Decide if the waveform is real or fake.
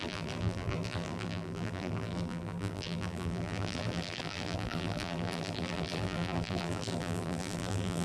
fake